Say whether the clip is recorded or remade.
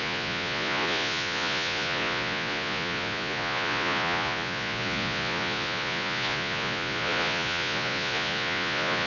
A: remade